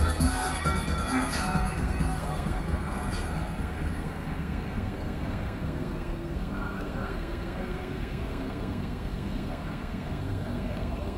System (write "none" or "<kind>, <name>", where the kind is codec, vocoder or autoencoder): codec, SNAC